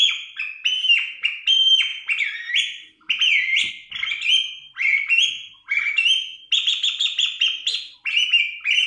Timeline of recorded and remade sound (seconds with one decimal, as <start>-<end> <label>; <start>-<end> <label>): 0.0-8.9 recorded